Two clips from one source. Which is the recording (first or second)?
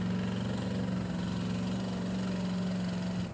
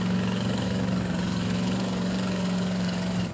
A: first